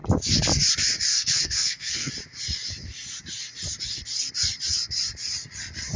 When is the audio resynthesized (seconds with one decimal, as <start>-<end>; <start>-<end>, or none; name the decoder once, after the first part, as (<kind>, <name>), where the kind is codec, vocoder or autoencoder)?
1.1-2.1 (codec, SNAC)